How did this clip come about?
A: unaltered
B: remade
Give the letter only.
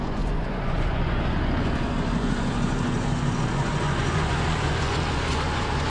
B